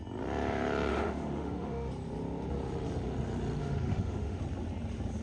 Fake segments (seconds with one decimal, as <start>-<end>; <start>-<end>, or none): 0.9-1.9; 3.6-4.4